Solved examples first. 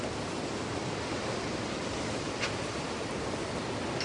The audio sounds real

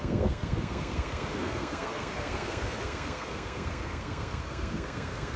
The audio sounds fake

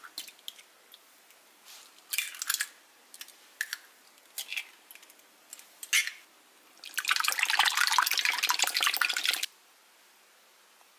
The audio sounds real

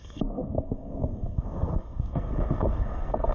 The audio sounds fake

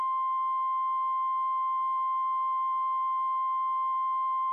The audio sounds real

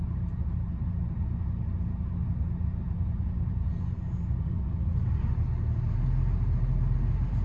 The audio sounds real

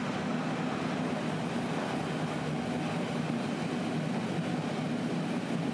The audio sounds real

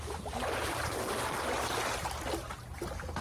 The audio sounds real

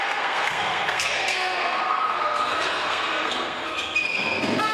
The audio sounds fake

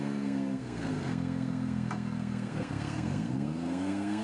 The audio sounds fake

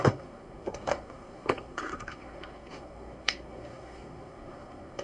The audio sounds fake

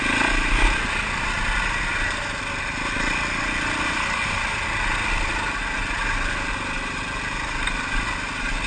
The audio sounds real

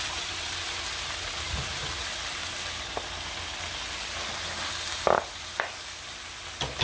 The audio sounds real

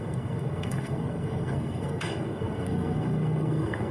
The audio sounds fake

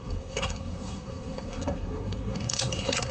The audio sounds fake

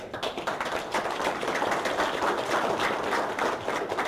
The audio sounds real